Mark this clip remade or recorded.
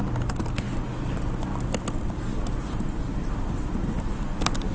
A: recorded